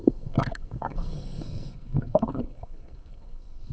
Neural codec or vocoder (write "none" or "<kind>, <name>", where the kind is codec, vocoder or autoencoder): codec, SNAC